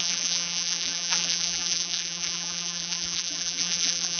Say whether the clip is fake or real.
fake